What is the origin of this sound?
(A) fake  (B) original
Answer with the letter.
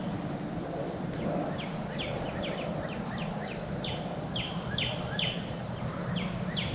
B